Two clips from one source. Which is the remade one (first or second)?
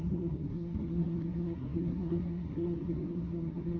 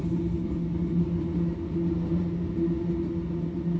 first